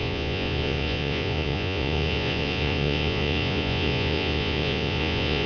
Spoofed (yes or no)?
yes